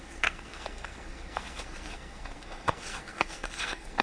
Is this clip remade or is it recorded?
remade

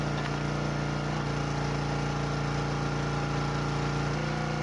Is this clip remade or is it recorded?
recorded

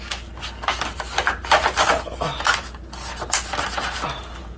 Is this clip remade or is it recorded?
recorded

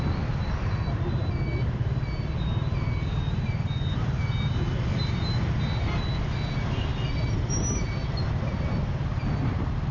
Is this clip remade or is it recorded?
recorded